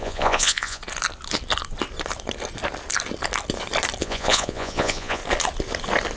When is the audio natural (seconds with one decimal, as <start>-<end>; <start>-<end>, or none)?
0.8-4.0; 5.2-6.2